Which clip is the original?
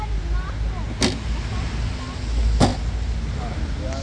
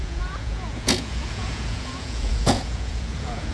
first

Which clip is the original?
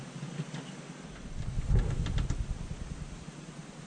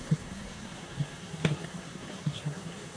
first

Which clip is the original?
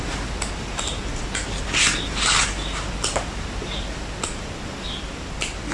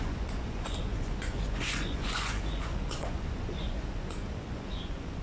first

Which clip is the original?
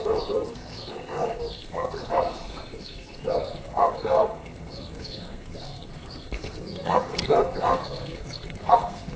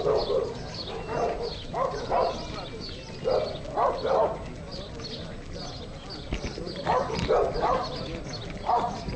second